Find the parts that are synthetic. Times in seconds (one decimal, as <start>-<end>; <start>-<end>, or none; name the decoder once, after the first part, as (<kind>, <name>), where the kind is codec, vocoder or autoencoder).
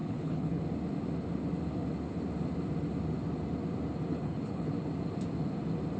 0.0-0.6 (codec, HILCodec); 4.1-4.7